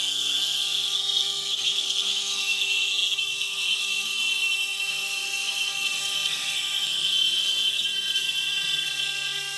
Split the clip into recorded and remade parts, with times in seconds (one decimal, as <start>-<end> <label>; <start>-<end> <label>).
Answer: 0.0-9.6 remade